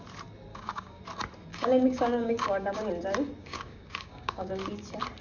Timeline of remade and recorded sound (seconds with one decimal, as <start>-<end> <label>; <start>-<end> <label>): 0.0-0.5 recorded; 0.5-1.0 remade; 1.0-1.5 recorded; 1.5-2.9 remade; 2.9-3.4 recorded; 3.4-4.5 remade; 4.5-5.2 recorded